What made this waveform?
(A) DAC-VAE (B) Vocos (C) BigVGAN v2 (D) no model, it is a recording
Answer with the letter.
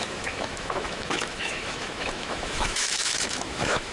A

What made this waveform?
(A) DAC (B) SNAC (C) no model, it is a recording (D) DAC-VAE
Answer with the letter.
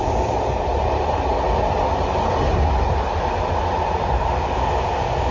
C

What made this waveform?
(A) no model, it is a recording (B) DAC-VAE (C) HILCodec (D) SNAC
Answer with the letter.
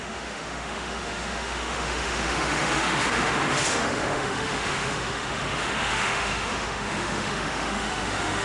B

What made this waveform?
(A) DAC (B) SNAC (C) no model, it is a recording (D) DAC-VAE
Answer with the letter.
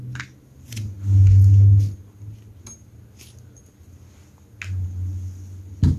C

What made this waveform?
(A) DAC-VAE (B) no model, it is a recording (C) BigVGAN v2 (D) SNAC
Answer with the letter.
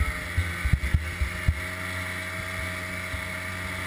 B